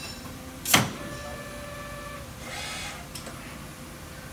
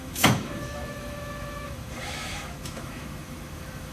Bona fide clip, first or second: first